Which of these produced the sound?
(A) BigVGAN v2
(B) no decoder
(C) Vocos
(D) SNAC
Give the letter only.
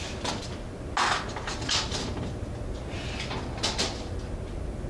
B